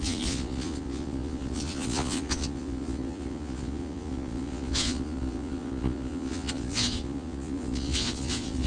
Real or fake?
fake